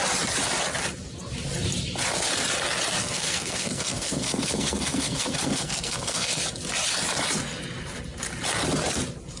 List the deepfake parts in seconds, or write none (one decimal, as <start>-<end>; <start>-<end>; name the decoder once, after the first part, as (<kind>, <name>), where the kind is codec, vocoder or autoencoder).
3.0-6.4 (codec, SNAC)